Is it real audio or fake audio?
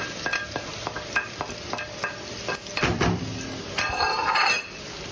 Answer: real